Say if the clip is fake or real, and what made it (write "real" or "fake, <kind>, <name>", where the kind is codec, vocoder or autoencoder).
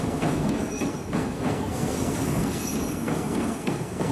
fake, codec, SNAC